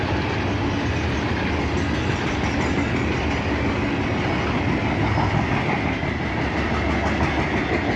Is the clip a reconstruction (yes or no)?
no